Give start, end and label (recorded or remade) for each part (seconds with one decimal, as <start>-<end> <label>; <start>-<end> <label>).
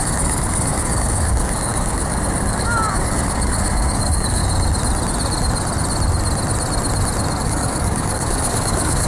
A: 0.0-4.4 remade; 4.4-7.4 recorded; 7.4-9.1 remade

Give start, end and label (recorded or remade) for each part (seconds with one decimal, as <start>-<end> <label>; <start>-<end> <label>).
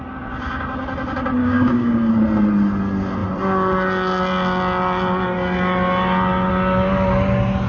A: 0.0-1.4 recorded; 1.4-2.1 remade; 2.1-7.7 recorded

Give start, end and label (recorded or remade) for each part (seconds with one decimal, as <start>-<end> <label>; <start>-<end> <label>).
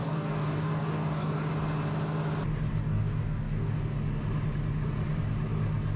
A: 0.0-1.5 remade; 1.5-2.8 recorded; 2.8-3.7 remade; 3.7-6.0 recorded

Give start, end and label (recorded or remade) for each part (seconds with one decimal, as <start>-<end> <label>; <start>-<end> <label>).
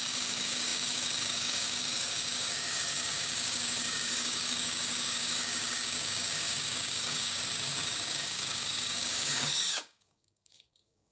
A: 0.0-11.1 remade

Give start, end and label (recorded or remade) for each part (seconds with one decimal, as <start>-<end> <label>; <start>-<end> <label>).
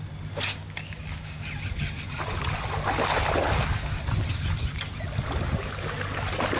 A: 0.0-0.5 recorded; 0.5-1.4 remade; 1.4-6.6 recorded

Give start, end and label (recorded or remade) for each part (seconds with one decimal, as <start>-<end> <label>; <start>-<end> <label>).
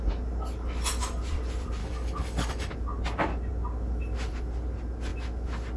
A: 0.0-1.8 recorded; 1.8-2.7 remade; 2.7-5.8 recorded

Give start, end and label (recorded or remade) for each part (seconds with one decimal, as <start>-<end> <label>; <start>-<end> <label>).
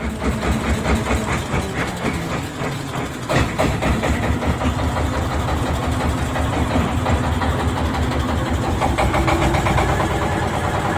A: 0.0-1.8 recorded; 1.8-2.3 remade; 2.3-11.0 recorded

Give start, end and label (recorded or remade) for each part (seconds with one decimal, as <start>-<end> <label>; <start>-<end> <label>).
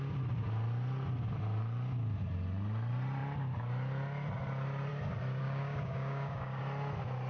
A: 0.0-5.4 recorded; 5.4-6.6 remade; 6.6-7.3 recorded